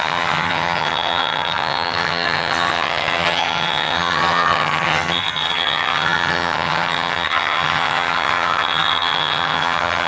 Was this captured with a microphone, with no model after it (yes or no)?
no